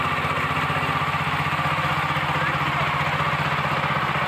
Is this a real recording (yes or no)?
yes